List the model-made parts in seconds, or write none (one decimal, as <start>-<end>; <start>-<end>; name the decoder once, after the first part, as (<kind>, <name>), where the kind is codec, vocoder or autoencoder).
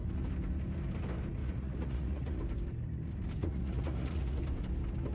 1.4-2.4 (vocoder, Vocos); 3.4-4.4